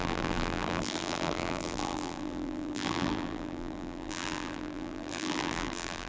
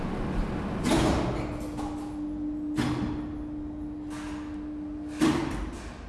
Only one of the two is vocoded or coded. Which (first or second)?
first